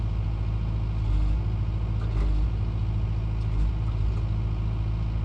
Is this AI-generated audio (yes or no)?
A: no